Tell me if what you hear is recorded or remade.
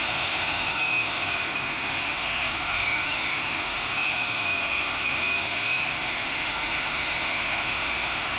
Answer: remade